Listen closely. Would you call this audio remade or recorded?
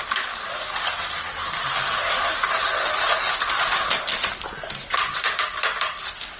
recorded